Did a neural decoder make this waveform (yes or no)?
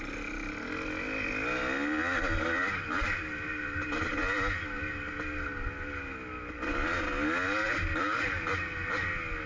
no